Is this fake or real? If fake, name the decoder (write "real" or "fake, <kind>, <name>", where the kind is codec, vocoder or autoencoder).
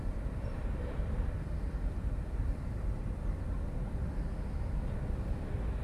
fake, vocoder, BigVGAN v2